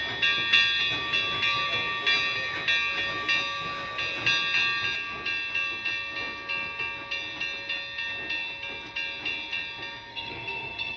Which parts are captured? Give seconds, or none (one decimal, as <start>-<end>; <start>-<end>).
0.0-10.1